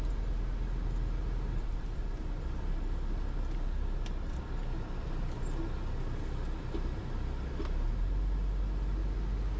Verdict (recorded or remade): recorded